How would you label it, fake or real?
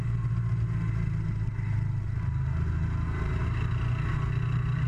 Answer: real